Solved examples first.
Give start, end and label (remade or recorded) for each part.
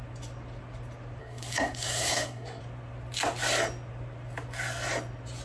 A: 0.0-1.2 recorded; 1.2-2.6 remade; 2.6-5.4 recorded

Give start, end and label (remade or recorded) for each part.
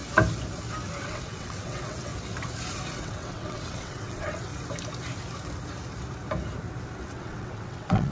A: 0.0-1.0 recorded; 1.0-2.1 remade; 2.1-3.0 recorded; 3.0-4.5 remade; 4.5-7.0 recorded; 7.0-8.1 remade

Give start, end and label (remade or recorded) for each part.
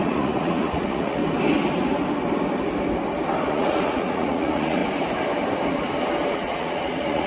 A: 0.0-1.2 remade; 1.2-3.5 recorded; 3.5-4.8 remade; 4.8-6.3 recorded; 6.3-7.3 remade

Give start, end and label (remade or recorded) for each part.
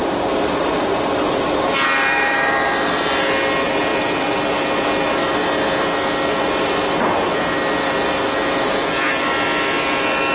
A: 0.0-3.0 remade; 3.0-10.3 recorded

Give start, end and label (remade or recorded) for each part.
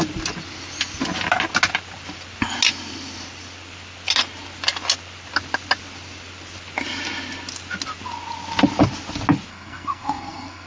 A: 0.0-9.5 recorded; 9.5-10.7 remade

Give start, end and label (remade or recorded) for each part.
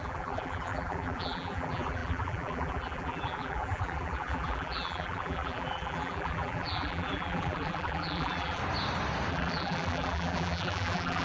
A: 0.0-8.6 remade; 8.6-9.3 recorded; 9.3-11.2 remade